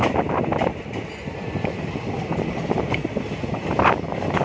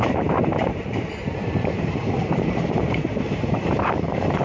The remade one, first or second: second